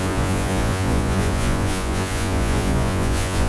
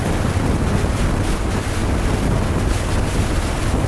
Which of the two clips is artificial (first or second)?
first